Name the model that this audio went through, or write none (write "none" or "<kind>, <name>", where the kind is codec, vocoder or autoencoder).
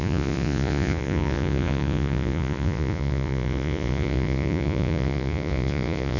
vocoder, Vocos